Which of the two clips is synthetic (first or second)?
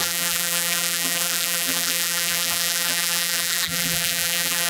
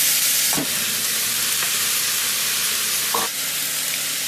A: first